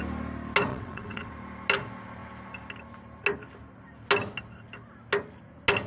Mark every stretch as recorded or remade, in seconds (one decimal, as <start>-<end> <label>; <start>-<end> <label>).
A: 0.0-0.7 recorded; 0.7-1.3 remade; 1.3-5.9 recorded